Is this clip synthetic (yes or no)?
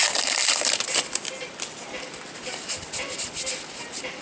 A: no